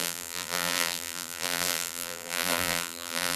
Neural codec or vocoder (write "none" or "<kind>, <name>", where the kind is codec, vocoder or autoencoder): vocoder, BigVGAN v2